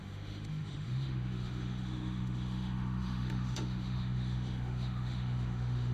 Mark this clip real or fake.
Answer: fake